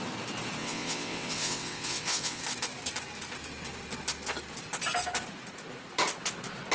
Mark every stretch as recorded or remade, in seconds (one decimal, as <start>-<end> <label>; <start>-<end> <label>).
0.0-0.6 recorded; 0.6-2.4 remade; 2.4-6.7 recorded